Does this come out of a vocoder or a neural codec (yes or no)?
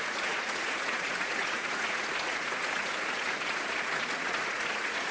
yes